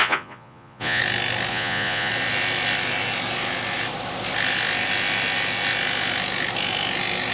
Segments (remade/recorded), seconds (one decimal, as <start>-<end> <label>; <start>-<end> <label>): 0.0-1.0 remade; 1.0-1.5 recorded; 1.5-2.1 remade; 2.1-7.3 recorded